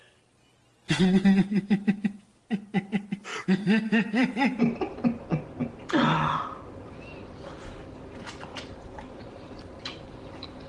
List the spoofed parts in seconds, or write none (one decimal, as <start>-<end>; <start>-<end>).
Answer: 3.3-4.6; 8.5-9.6